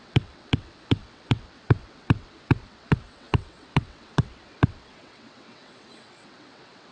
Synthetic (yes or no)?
yes